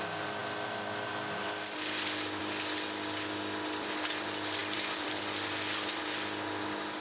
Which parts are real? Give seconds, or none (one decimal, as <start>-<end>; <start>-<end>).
0.0-4.6; 6.0-7.0